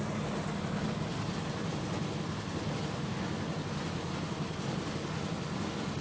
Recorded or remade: recorded